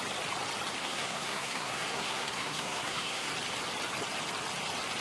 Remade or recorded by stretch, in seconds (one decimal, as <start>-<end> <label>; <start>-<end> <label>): 0.0-0.8 recorded; 0.8-3.3 remade; 3.3-5.0 recorded